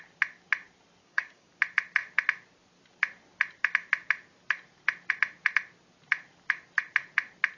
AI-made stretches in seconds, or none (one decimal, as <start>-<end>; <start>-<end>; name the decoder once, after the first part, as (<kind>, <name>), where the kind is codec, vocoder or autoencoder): 1.0-1.5 (codec, DAC)

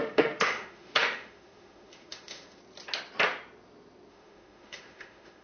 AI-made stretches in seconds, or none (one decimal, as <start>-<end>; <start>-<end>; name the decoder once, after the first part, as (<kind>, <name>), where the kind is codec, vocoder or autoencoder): 0.0-2.6 (autoencoder, DAC-VAE); 4.1-5.4

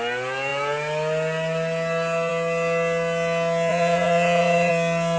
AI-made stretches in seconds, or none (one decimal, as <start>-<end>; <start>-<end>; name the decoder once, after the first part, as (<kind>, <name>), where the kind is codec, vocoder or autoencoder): 3.7-4.7 (vocoder, Vocos)

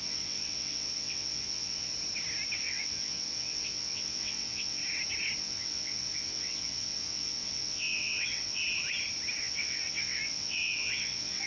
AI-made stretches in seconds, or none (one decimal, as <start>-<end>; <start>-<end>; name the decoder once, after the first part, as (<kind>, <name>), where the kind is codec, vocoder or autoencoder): 0.0-1.9 (vocoder, WaveNeXt); 2.6-4.8; 5.4-8.6; 9.4-11.5

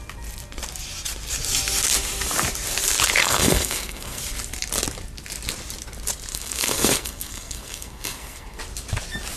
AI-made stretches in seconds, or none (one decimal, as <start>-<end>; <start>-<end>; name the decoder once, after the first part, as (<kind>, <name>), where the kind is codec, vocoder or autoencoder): 3.2-4.2 (codec, SNAC); 6.3-8.6